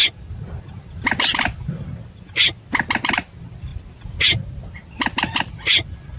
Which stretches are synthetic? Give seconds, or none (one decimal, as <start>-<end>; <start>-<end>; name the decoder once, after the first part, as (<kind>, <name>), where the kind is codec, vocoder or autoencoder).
none